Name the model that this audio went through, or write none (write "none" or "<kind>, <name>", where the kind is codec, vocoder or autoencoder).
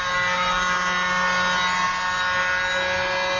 none